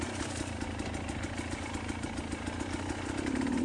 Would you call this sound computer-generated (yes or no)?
no